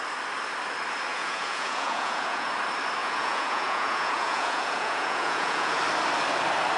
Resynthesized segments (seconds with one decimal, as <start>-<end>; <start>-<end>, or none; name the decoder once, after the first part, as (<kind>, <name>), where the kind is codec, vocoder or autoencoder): 1.1-2.5 (vocoder, Vocos); 3.0-5.8